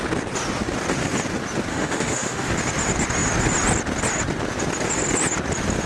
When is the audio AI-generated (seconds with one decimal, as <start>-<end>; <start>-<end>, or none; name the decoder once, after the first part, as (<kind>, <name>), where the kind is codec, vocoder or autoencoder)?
1.7-2.5 (autoencoder, DAC-VAE)